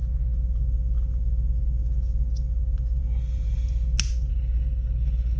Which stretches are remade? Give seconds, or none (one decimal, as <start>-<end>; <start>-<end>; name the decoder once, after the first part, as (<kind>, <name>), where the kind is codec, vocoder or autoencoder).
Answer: 4.3-5.4 (codec, HILCodec)